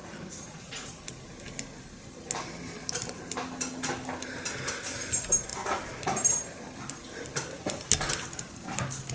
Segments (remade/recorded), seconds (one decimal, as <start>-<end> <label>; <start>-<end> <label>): 0.0-0.9 remade; 0.9-9.1 recorded